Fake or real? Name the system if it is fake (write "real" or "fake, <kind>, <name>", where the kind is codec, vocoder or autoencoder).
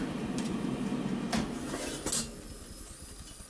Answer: real